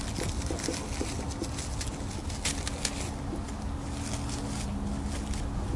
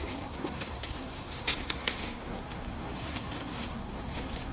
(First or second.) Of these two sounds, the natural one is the first